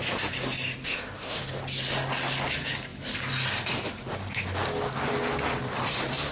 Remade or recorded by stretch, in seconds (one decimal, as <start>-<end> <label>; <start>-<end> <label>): 0.0-0.8 recorded; 0.8-1.5 remade; 1.5-6.3 recorded